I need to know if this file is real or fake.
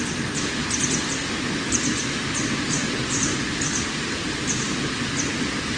real